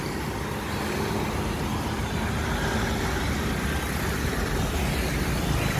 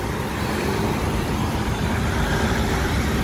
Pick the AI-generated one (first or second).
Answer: second